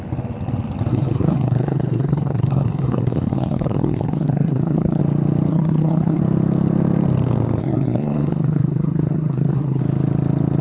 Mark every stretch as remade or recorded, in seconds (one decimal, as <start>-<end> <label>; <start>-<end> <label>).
0.0-0.9 recorded; 0.9-5.0 remade; 5.0-5.5 recorded; 5.5-6.2 remade; 6.2-7.6 recorded; 7.6-9.8 remade; 9.8-10.6 recorded